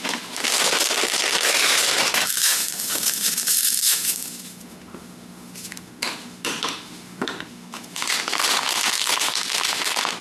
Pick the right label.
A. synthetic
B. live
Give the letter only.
A